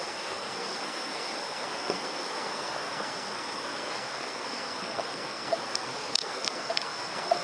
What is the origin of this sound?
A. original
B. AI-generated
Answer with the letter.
B